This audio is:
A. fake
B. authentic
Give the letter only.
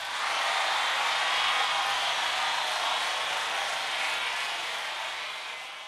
B